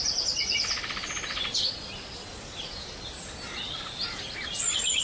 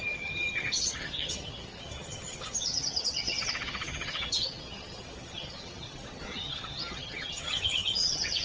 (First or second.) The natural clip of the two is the first